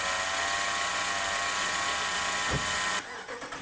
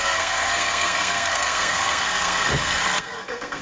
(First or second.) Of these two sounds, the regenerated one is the second